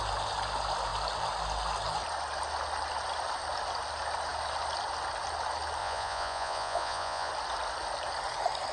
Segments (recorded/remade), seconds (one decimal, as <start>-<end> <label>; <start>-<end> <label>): 0.0-5.8 recorded; 5.8-7.3 remade; 7.3-8.7 recorded